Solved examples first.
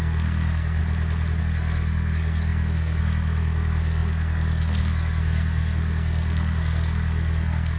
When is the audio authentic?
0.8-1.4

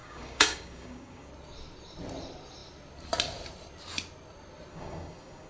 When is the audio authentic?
1.3-4.7

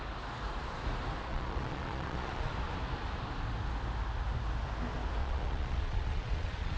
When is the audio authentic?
0.0-1.3; 2.5-5.2

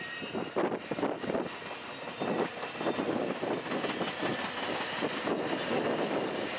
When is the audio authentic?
0.0-6.6

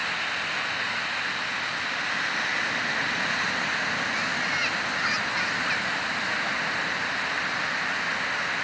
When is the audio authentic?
0.0-8.6

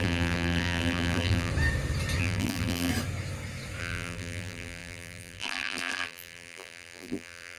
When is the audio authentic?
1.5-2.2; 2.9-3.8

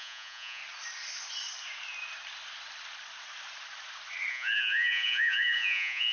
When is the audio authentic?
0.6-4.3